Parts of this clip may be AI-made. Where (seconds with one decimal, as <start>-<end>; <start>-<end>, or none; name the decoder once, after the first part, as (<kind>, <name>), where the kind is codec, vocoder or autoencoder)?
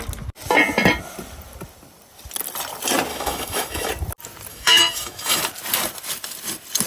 3.1-3.9 (autoencoder, DAC-VAE); 4.5-5.4